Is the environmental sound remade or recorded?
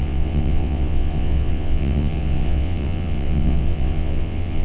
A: remade